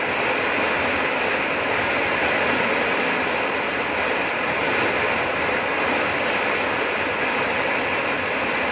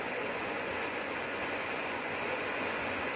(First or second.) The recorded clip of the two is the first